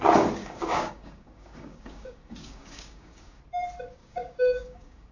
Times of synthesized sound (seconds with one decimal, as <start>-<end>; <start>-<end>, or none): 0.4-3.4; 4.0-5.1